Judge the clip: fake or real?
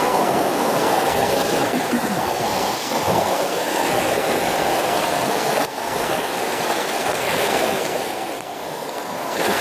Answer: fake